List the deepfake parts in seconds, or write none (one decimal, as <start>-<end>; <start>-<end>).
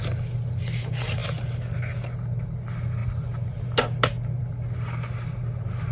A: none